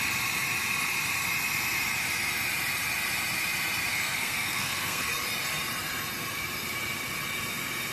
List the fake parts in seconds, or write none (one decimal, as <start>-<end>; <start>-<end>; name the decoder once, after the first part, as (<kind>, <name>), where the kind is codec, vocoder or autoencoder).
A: 3.9-5.1 (codec, SNAC)